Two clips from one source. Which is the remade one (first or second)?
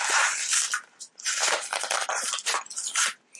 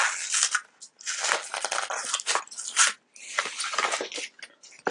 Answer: first